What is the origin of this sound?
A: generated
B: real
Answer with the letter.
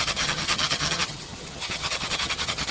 A